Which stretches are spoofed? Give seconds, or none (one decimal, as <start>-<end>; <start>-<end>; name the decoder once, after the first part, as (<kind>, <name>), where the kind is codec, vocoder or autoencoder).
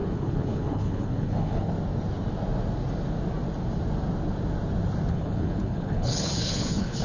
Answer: 0.0-1.7 (codec, HILCodec); 5.1-7.0